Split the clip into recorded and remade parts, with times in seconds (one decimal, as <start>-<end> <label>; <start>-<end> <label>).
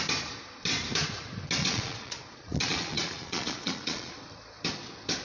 0.0-1.6 recorded; 1.6-4.2 remade; 4.2-5.2 recorded